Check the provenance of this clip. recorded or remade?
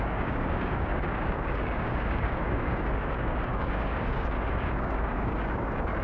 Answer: remade